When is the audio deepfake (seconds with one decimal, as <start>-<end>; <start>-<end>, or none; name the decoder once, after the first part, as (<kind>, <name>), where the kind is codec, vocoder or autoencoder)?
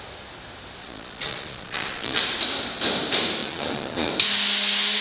0.8-2.2 (vocoder, Vocos); 3.4-4.1